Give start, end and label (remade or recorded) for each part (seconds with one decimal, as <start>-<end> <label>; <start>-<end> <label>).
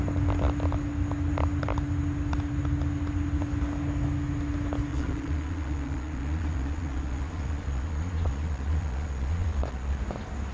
0.0-4.9 recorded; 4.9-10.0 remade; 10.0-10.5 recorded